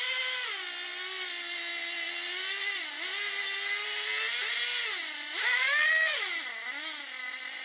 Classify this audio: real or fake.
real